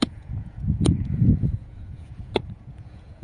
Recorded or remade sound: remade